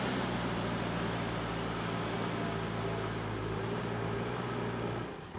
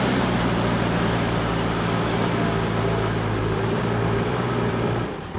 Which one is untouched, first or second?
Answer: first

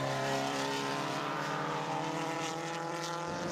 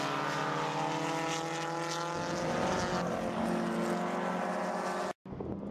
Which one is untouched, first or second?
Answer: second